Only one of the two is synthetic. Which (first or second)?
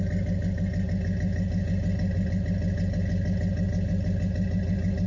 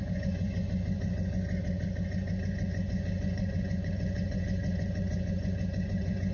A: second